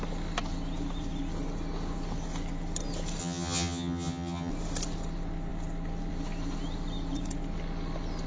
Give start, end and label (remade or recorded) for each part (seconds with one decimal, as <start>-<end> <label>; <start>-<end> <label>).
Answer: 0.0-3.2 recorded; 3.2-4.5 remade; 4.5-8.3 recorded